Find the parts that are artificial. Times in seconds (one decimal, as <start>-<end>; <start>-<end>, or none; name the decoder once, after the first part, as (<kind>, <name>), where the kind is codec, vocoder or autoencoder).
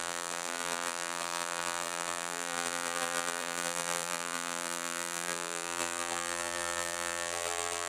0.0-7.9 (vocoder, BigVGAN v2)